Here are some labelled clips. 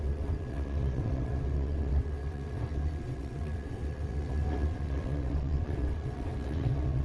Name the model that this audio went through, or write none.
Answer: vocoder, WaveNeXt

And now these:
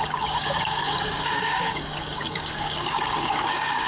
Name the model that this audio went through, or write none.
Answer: codec, DAC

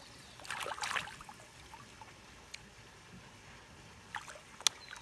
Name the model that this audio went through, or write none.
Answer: none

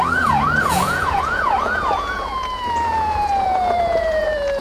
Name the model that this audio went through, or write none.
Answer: vocoder, Vocos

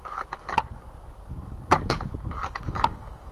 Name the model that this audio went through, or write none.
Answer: codec, DAC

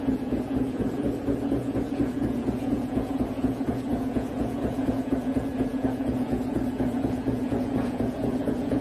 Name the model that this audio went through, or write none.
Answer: vocoder, Vocos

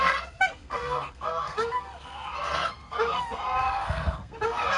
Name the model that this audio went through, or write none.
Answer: codec, SNAC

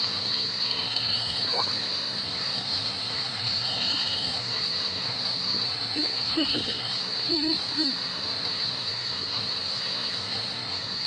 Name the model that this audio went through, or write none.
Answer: codec, SNAC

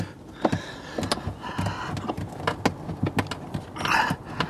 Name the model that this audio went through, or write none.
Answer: none